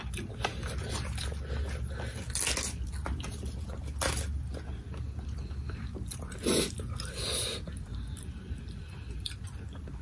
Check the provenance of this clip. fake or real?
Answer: real